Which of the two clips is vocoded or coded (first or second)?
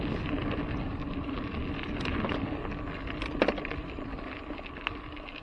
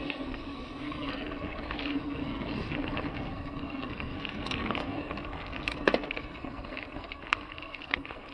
second